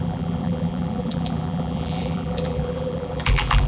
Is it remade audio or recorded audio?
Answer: remade